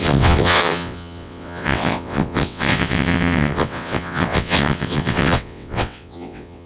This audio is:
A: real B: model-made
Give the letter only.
B